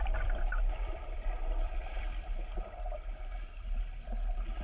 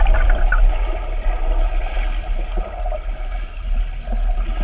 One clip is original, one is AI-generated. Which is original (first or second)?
second